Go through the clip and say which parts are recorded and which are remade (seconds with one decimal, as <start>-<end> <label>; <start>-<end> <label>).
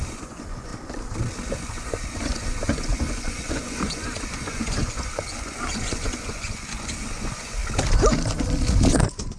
0.0-0.7 remade; 0.7-1.5 recorded; 1.5-7.6 remade; 7.6-8.9 recorded; 8.9-9.4 remade